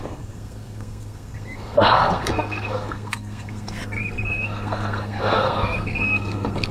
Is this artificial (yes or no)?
yes